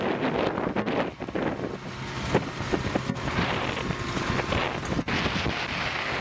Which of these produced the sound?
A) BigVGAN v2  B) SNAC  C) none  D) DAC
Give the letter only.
C